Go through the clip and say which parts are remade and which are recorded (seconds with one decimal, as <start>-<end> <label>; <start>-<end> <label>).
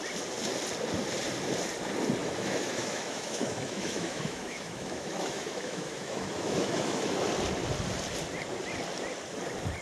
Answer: 0.0-2.2 recorded; 2.2-7.2 remade; 7.2-9.8 recorded